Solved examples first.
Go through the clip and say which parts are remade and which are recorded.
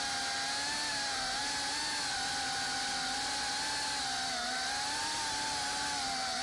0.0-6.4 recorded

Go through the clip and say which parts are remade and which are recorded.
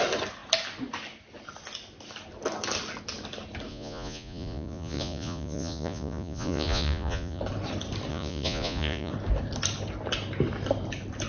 0.0-3.7 recorded; 3.7-7.4 remade; 7.4-8.1 recorded; 8.1-9.1 remade; 9.1-11.3 recorded